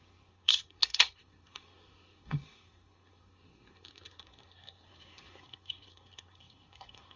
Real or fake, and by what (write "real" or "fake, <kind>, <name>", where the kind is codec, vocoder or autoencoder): fake, codec, SNAC